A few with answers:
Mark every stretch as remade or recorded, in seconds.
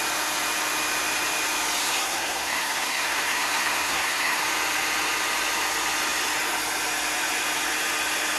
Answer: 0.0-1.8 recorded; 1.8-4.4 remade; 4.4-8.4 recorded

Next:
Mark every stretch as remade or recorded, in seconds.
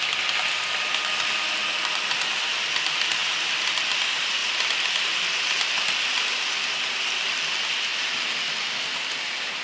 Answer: 0.0-3.2 recorded; 3.2-3.9 remade; 3.9-4.4 recorded; 4.4-7.4 remade; 7.4-9.6 recorded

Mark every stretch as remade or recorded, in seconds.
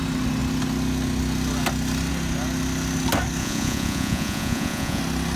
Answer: 0.0-3.4 recorded; 3.4-5.0 remade; 5.0-5.4 recorded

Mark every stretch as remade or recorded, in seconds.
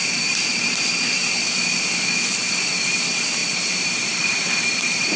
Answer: 0.0-1.4 remade; 1.4-2.9 recorded; 2.9-5.2 remade